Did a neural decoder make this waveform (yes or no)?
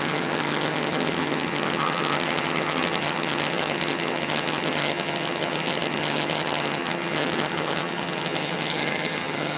yes